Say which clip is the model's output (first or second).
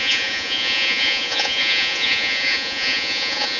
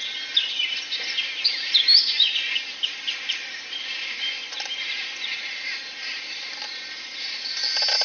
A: first